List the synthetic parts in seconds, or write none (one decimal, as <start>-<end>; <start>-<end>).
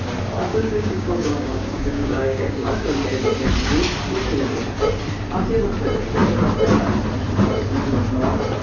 0.5-2.7